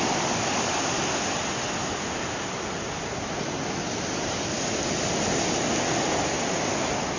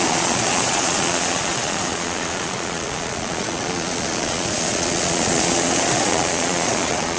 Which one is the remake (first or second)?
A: second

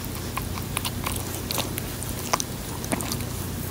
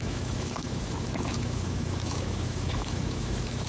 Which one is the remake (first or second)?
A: second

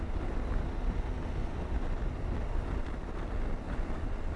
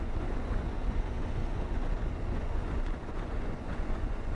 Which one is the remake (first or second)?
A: second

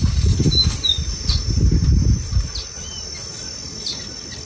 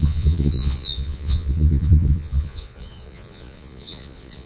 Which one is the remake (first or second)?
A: second